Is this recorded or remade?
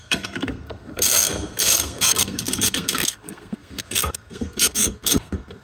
remade